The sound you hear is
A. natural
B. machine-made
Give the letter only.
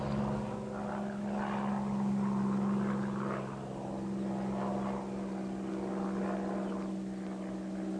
A